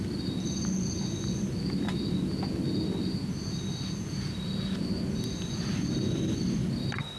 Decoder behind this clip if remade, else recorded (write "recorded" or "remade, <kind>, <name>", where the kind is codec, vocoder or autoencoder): recorded